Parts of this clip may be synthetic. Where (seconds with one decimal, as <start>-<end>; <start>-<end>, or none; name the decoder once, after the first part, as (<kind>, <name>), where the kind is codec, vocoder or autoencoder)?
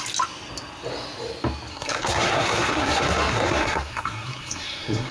1.7-5.1 (codec, SNAC)